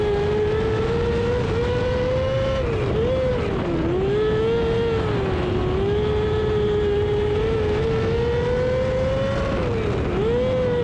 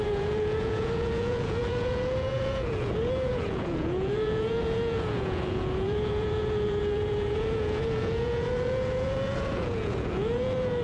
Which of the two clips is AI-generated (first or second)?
second